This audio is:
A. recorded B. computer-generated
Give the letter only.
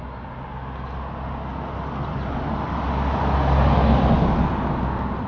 A